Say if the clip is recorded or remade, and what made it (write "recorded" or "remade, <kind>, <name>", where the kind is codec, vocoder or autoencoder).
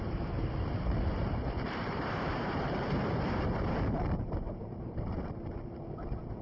remade, vocoder, BigVGAN v2